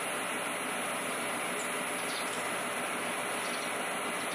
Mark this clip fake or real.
real